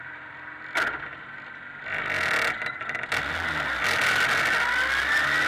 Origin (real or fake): real